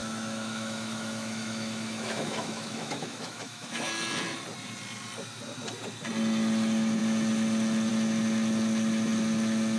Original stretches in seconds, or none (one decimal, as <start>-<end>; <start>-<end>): 3.8-9.8